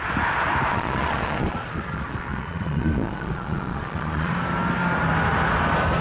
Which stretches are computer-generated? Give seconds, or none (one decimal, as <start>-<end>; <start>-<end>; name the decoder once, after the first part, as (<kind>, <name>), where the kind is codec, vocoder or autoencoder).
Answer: 0.7-4.3 (vocoder, Vocos)